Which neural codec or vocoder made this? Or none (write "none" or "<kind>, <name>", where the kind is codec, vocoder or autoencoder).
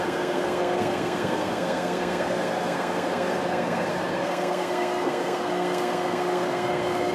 codec, SNAC